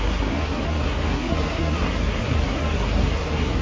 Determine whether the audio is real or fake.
fake